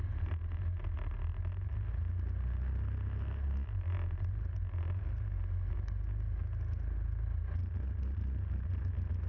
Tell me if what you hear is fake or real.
real